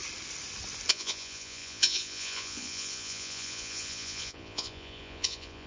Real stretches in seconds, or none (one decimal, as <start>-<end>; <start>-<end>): 0.0-0.9